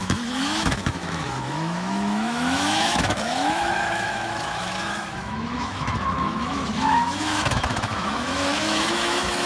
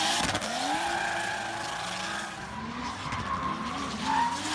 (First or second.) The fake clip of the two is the first